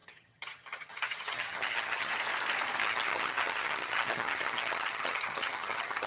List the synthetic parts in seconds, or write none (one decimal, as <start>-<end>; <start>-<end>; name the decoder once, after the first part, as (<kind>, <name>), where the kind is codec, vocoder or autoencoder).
0.0-2.1 (vocoder, HiFi-GAN); 2.8-6.1